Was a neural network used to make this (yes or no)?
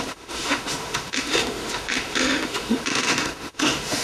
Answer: yes